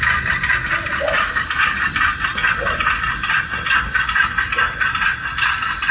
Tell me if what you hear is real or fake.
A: real